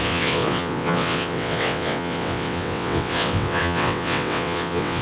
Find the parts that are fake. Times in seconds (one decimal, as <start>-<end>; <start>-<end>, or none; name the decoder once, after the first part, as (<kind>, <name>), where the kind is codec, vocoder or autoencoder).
0.0-5.0 (vocoder, WaveNeXt)